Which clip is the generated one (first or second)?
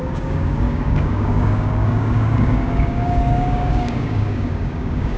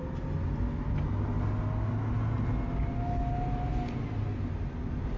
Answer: first